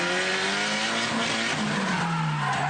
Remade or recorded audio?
recorded